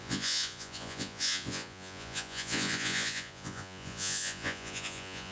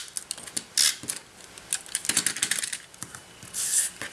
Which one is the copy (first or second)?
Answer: first